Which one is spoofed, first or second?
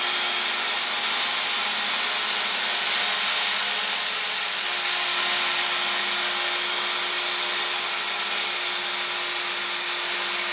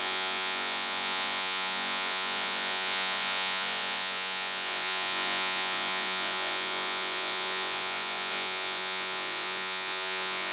second